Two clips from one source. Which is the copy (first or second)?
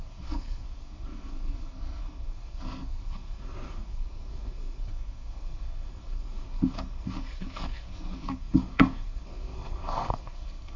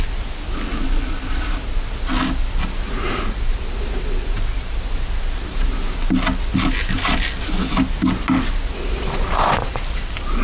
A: first